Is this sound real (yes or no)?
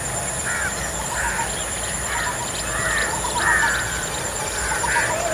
yes